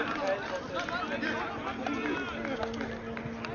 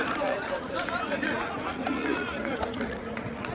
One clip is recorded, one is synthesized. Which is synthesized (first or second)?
second